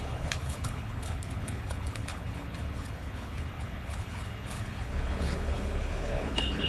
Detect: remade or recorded remade